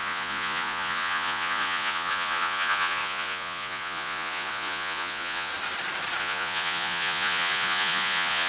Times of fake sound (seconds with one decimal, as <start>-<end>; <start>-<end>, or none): 0.0-5.5; 6.2-8.5